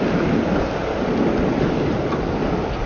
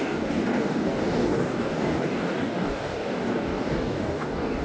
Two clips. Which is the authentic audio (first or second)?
first